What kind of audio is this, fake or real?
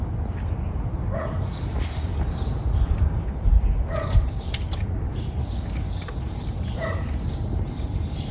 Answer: real